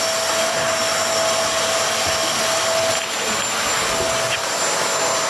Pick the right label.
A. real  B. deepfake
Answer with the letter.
A